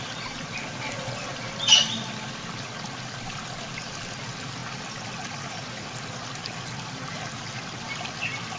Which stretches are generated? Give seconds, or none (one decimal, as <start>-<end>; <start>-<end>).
none